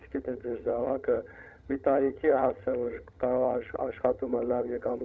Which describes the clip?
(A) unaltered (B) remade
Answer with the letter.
B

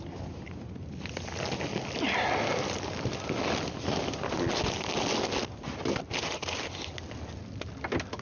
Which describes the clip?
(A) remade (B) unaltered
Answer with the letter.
B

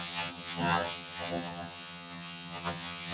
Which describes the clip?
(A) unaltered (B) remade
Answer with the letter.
B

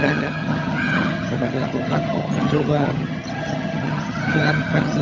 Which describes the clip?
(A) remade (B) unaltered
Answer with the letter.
A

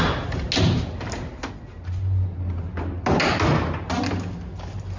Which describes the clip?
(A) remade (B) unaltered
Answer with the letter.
B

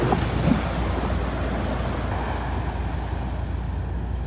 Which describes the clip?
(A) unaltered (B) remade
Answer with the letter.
A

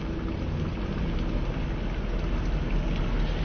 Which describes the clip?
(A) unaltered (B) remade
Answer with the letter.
A